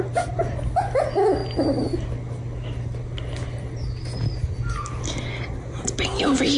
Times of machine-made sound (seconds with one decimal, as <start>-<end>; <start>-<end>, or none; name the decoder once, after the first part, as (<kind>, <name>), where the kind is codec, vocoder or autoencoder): none